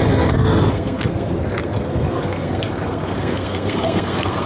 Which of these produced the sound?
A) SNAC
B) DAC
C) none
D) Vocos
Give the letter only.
A